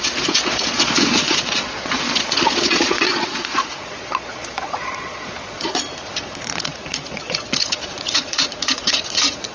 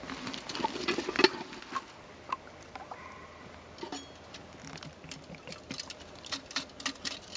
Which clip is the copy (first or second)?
first